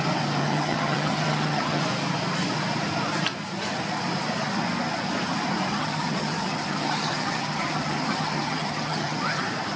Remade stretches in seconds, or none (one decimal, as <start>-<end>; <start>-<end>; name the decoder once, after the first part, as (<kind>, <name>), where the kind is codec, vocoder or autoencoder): 0.4-1.8 (vocoder, HiFi-GAN); 5.7-9.4